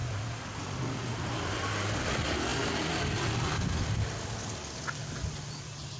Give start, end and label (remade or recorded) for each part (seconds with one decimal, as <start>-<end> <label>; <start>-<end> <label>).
0.0-6.0 recorded